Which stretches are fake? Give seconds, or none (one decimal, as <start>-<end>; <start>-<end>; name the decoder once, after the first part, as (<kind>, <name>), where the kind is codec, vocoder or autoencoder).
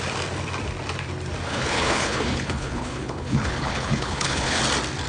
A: 1.5-4.6 (codec, HILCodec)